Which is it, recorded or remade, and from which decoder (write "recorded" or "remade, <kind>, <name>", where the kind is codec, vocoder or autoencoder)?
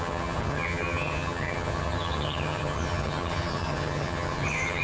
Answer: remade, vocoder, HiFi-GAN